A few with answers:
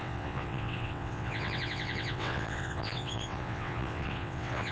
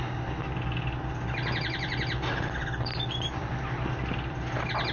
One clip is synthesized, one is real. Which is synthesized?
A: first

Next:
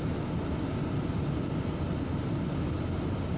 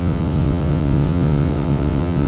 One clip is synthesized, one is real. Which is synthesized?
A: second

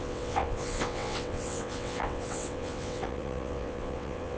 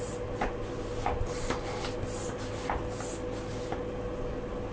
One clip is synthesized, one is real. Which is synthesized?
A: first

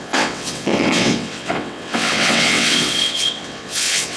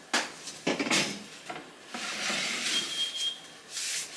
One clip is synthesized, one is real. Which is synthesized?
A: first